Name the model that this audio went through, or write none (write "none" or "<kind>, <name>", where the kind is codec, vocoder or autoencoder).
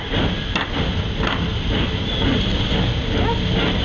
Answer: none